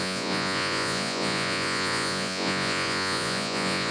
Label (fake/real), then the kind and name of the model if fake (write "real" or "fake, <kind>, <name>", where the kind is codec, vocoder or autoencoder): fake, vocoder, Vocos